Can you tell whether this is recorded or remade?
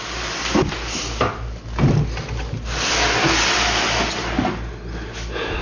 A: recorded